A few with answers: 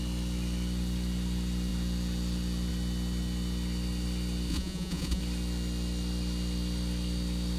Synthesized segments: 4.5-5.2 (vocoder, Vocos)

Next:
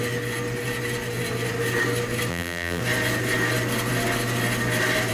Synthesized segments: 2.3-2.8 (vocoder, BigVGAN v2)

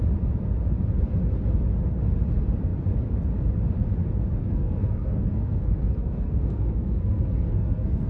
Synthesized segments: 4.4-8.1 (codec, SNAC)

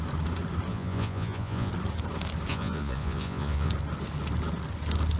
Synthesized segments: 0.7-1.7 (vocoder, Vocos); 2.5-3.7